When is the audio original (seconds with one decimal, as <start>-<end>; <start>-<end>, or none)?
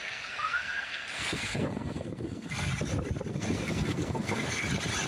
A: 2.7-3.3; 4.6-5.1